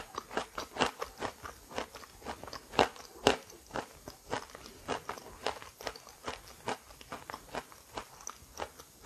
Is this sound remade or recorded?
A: recorded